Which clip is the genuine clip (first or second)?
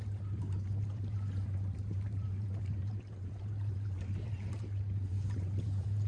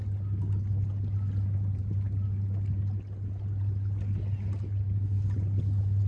second